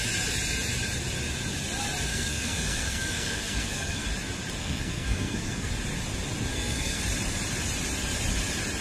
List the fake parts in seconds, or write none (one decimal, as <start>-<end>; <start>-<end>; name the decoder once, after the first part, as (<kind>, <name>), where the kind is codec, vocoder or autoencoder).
2.1-4.1 (codec, SNAC); 4.6-5.7; 6.5-7.0